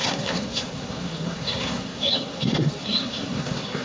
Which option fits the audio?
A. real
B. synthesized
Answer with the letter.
B